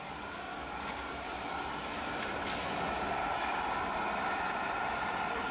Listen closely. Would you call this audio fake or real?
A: real